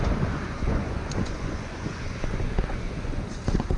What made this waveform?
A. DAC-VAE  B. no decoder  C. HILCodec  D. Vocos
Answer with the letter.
D